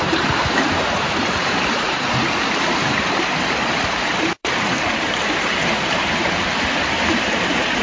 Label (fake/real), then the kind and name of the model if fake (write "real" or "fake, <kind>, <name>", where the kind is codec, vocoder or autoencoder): fake, vocoder, BigVGAN v2